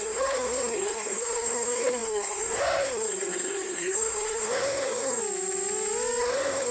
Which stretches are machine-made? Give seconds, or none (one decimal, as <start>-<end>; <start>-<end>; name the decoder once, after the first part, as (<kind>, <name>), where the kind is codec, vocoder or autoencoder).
0.0-5.2 (codec, SNAC); 6.2-6.7